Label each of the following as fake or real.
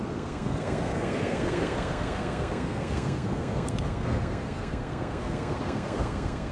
fake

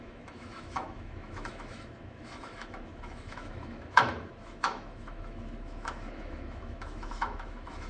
fake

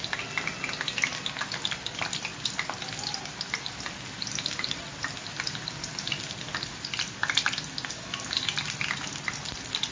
real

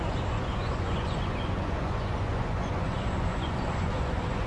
fake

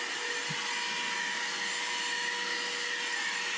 real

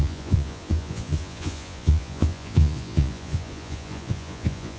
fake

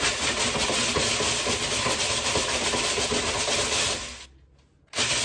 real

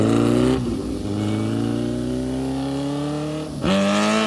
real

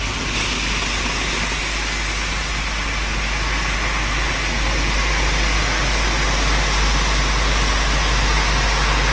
real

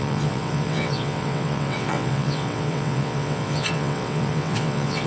fake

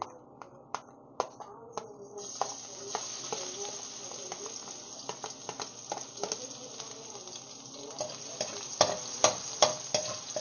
real